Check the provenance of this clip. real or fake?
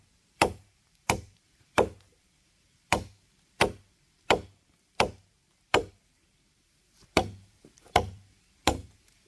fake